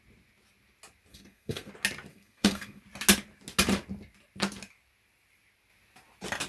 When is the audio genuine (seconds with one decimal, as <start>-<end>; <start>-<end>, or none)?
0.0-1.1; 1.7-2.1; 2.8-6.5